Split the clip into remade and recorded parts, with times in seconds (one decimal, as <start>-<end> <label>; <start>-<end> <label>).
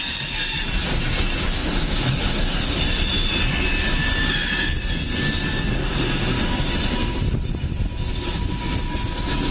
0.0-1.6 recorded; 1.6-2.6 remade; 2.6-4.0 recorded; 4.0-4.8 remade; 4.8-5.8 recorded; 5.8-6.7 remade; 6.7-9.5 recorded